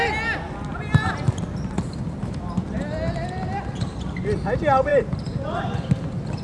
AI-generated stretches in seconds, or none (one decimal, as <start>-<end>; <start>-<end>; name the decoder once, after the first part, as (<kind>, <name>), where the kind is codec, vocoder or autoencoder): 4.9-5.6 (vocoder, BigVGAN v2)